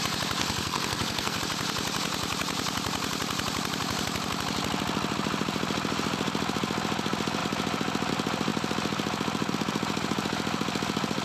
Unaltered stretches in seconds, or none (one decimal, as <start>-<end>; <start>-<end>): 0.0-0.4; 1.4-11.2